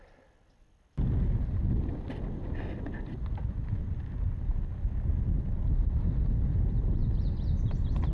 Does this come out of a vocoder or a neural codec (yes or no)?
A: no